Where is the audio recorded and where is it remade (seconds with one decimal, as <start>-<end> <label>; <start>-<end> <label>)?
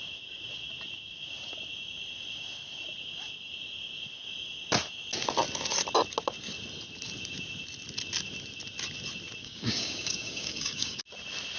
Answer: 0.0-9.4 recorded; 9.4-11.0 remade; 11.0-11.6 recorded